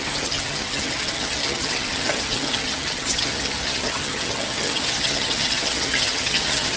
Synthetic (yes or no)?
yes